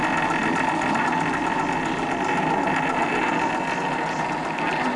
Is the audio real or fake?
real